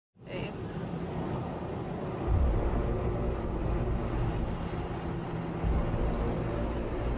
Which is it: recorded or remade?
recorded